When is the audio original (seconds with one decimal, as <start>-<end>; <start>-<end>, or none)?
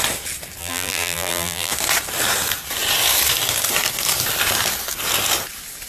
0.0-0.6; 1.7-5.9